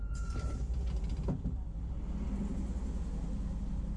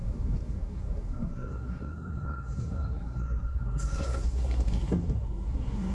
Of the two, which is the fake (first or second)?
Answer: second